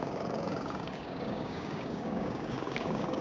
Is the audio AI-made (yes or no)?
yes